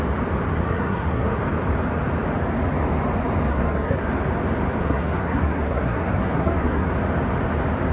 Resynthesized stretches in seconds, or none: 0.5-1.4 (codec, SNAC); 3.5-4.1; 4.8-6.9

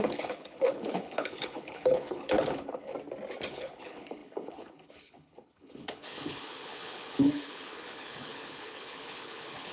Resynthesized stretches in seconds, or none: 0.0-2.9 (codec, HILCodec); 3.5-9.7

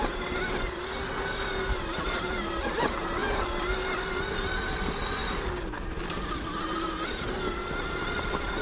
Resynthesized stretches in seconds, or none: none